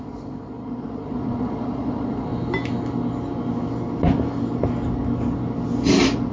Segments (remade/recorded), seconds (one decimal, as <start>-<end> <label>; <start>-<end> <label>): 0.0-2.3 remade; 2.3-6.3 recorded

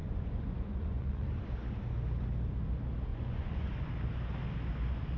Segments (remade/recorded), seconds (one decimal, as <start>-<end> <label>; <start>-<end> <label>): 0.0-1.5 remade; 1.5-3.1 recorded; 3.1-3.9 remade; 3.9-5.2 recorded

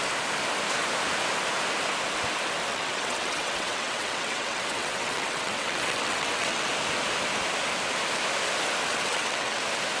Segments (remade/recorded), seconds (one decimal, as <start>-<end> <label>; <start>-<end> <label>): 0.0-2.7 recorded; 2.7-6.7 remade; 6.7-8.9 recorded; 8.9-9.6 remade; 9.6-10.0 recorded